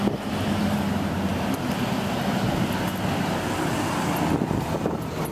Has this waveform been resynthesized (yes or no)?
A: no